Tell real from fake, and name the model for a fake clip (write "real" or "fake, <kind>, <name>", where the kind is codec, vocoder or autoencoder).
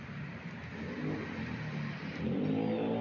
real